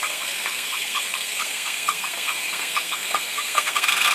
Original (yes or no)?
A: no